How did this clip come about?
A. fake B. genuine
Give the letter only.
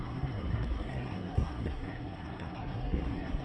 A